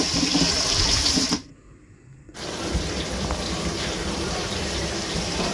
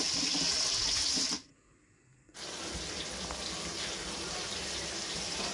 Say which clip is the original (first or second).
second